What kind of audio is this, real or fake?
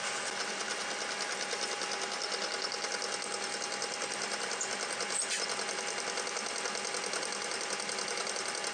real